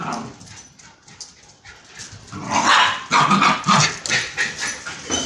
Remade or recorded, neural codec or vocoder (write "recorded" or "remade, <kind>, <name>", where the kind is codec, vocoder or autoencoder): recorded